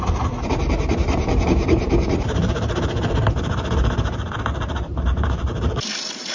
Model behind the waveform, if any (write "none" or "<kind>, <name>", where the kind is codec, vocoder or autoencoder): vocoder, BigVGAN v2